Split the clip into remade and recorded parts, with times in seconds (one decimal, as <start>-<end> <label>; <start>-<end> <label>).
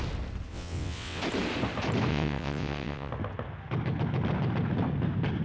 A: 0.0-0.5 recorded; 0.5-1.2 remade; 1.2-2.1 recorded; 2.1-3.1 remade; 3.1-5.4 recorded